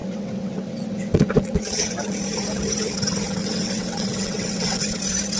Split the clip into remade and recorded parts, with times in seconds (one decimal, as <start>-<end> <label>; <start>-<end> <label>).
0.0-2.2 remade; 2.2-3.4 recorded; 3.4-4.8 remade; 4.8-5.4 recorded